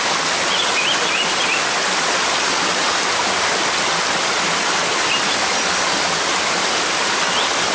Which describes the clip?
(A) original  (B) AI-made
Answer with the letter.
A